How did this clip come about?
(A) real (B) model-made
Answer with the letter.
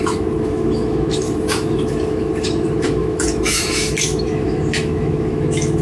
B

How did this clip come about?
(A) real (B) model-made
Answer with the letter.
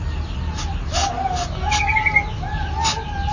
A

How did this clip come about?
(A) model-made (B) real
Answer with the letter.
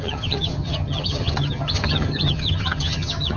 A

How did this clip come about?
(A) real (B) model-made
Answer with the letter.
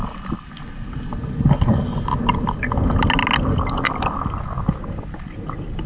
A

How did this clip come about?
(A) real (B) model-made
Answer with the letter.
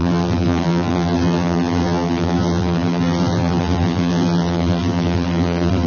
B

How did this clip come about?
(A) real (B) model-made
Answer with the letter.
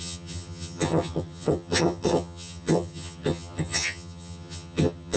B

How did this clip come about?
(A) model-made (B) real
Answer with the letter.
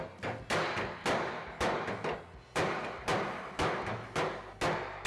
B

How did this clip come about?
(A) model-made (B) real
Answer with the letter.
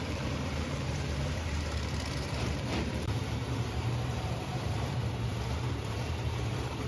A